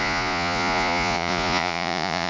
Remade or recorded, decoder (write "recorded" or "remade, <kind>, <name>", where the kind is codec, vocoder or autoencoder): remade, vocoder, Vocos